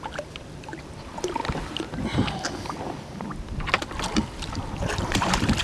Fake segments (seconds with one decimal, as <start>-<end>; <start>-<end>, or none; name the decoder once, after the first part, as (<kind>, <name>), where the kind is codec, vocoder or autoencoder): 0.0-1.4 (vocoder, BigVGAN v2); 2.8-5.6